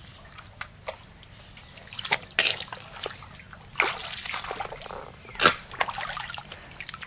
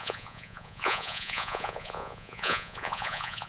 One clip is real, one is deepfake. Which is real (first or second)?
first